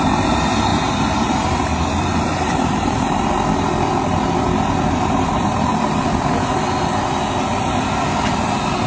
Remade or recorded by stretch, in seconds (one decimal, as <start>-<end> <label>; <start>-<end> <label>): 0.0-0.7 recorded; 0.7-3.3 remade; 3.3-8.9 recorded